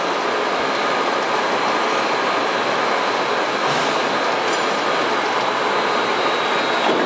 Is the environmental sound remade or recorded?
recorded